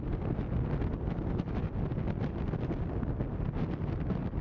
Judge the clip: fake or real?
real